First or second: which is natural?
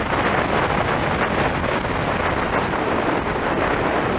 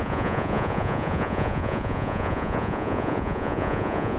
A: first